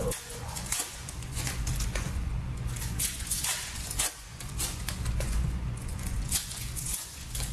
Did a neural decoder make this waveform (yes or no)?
yes